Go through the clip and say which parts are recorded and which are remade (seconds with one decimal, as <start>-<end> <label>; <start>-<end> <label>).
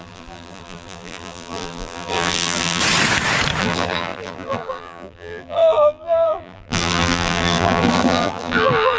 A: 0.0-2.8 remade; 2.8-3.6 recorded; 3.6-9.0 remade